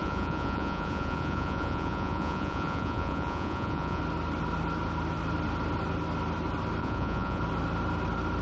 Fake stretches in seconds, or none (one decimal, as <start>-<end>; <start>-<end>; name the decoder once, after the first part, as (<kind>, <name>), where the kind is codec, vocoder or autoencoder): 0.0-4.0 (vocoder, Vocos); 6.8-7.4